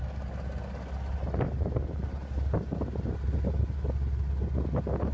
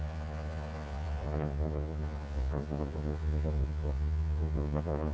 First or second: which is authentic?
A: first